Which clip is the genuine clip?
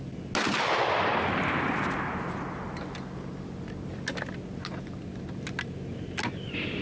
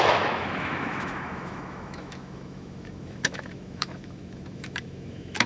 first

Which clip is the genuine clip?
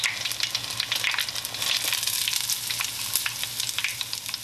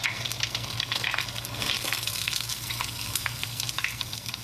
first